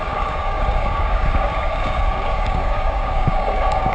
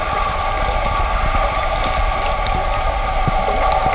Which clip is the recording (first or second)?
second